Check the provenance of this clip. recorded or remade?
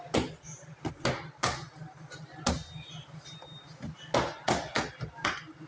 recorded